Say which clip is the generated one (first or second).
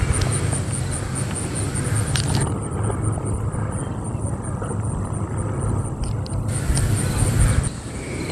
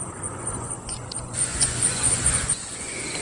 second